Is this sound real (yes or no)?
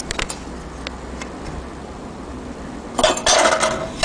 yes